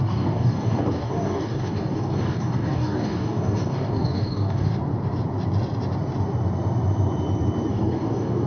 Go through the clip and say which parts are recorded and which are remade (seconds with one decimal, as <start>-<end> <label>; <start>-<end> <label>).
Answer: 0.0-4.7 remade; 4.7-7.7 recorded; 7.7-8.5 remade